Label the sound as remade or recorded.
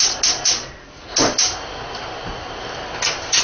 recorded